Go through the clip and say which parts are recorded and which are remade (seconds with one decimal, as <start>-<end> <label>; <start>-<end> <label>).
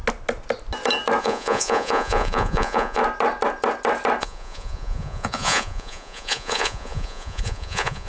0.0-1.2 recorded; 1.2-3.0 remade; 3.0-4.2 recorded; 4.2-8.1 remade